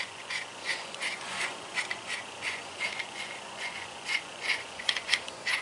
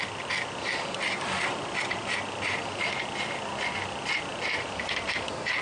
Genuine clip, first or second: second